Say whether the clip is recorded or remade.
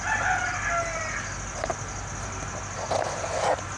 recorded